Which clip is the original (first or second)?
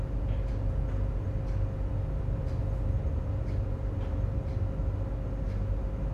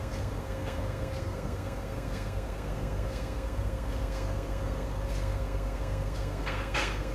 first